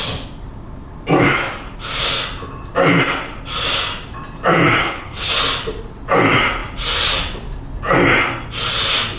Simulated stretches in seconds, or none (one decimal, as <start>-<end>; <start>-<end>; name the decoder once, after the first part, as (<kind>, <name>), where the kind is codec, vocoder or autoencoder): 4.8-5.3 (codec, HILCodec)